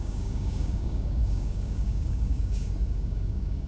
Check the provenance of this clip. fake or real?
fake